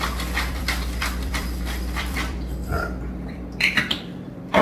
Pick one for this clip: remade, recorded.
remade